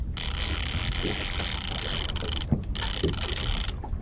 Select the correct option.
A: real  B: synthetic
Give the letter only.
A